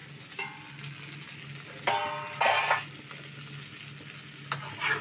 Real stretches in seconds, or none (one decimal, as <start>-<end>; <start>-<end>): 0.0-5.0